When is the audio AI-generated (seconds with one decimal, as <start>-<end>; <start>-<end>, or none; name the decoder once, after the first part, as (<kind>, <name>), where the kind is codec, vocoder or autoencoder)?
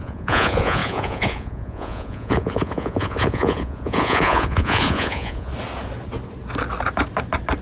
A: 0.0-5.5 (vocoder, Vocos)